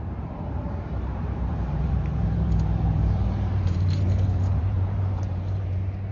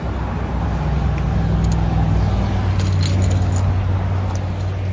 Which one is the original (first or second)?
second